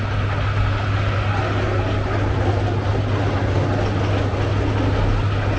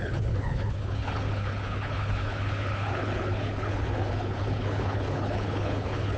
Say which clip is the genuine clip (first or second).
first